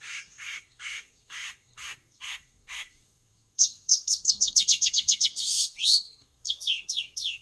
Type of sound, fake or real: fake